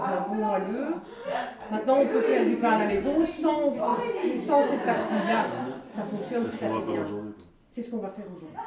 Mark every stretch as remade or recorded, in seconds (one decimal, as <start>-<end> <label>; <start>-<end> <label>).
0.0-8.7 recorded